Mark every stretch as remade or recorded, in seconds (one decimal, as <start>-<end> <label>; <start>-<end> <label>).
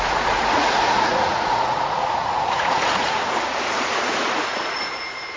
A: 0.0-5.4 remade